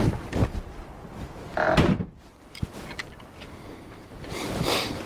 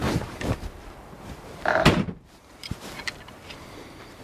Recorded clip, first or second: first